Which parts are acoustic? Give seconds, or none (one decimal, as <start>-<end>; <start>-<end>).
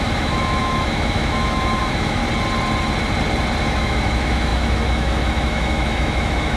2.2-3.6